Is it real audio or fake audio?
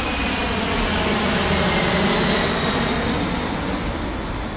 real